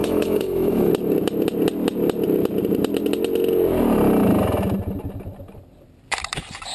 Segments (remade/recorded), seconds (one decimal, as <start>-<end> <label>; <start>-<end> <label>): 0.0-0.9 remade; 0.9-6.7 recorded